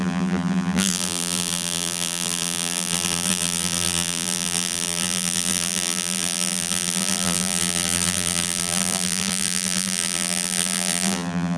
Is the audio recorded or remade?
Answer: remade